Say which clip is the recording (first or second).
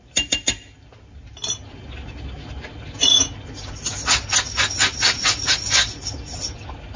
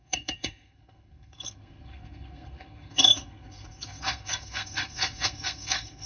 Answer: first